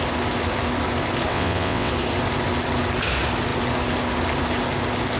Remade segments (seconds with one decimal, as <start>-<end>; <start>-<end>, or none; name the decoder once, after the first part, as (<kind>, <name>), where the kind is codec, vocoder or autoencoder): 1.3-1.9 (vocoder, WaveNeXt)